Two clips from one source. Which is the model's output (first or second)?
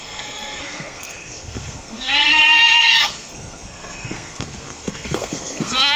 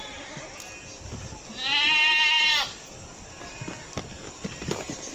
first